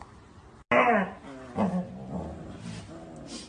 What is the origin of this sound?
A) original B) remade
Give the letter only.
A